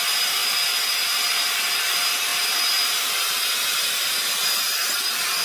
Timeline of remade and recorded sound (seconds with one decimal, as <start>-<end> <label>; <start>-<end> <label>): 0.0-5.4 remade